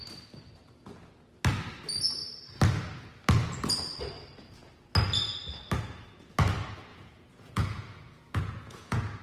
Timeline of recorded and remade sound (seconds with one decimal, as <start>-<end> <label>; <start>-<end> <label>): 0.0-6.9 recorded; 6.9-9.2 remade